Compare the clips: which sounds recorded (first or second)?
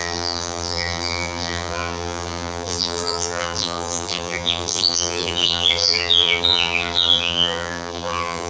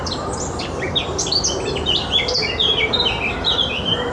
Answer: second